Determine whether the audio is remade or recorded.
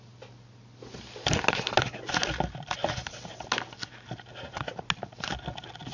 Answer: recorded